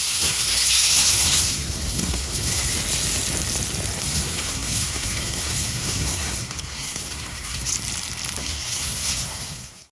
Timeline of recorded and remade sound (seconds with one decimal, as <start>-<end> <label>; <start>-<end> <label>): 0.0-2.7 remade; 2.7-4.0 recorded; 4.0-7.7 remade; 7.7-8.4 recorded; 8.4-9.9 remade